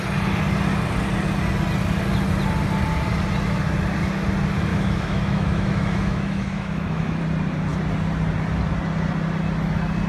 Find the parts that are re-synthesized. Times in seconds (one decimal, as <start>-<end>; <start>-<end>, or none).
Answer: 4.7-7.2

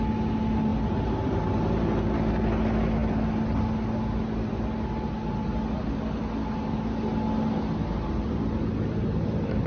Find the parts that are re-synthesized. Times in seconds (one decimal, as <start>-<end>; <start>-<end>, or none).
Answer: none

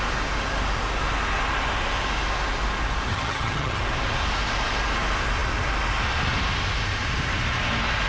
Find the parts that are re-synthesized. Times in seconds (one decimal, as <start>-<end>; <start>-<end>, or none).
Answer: 3.1-3.8

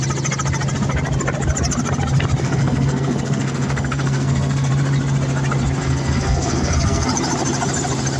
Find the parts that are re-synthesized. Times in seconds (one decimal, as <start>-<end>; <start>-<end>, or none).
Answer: 2.4-4.7; 5.8-7.1

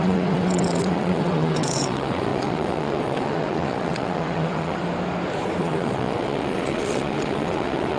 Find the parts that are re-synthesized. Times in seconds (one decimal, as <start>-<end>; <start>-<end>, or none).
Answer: 0.0-4.8; 5.6-8.0

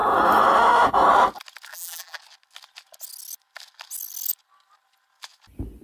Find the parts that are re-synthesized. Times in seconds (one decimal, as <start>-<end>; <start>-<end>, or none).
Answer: 1.7-2.2

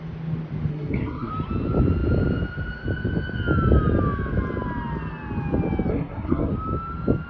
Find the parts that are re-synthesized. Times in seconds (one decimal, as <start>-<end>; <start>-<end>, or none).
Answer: 0.7-1.3; 5.9-6.5